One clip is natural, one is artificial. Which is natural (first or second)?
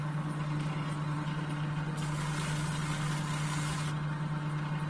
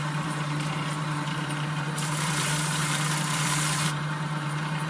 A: first